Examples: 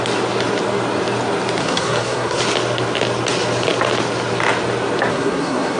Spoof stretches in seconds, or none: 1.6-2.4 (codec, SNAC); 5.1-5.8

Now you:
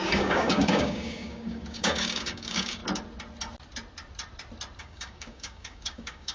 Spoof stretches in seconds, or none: 0.0-2.8 (codec, DAC); 4.8-6.3